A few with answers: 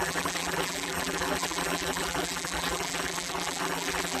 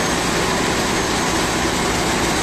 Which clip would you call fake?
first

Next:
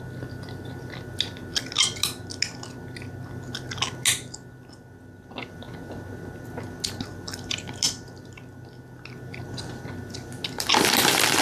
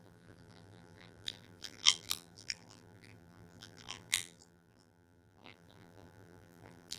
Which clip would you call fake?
second